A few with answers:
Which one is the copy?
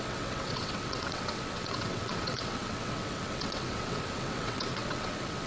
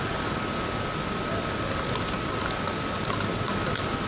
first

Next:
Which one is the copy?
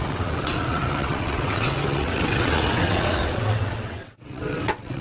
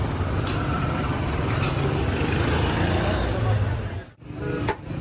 first